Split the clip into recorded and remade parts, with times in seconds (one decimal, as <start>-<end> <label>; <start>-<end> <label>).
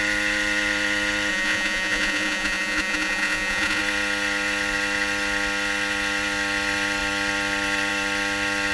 0.0-1.3 recorded; 1.3-3.8 remade; 3.8-8.7 recorded